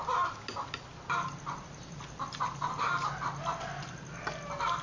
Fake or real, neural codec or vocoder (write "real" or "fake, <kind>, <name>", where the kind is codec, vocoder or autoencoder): real